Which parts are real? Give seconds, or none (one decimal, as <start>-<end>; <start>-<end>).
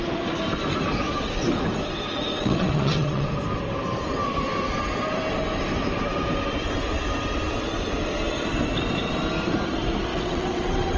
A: 0.0-2.3; 3.3-10.1